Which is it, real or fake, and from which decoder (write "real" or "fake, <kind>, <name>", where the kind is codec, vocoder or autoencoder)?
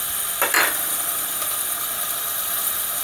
real